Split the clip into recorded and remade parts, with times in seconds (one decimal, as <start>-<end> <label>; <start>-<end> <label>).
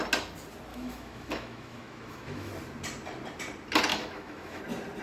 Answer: 0.0-0.7 recorded; 0.7-2.5 remade; 2.5-3.9 recorded; 3.9-4.6 remade; 4.6-5.0 recorded